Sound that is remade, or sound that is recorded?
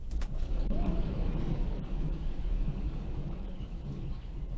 remade